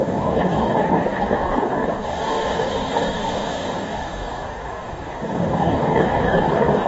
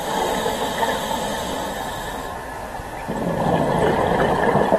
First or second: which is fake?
first